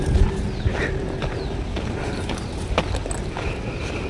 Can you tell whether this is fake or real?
real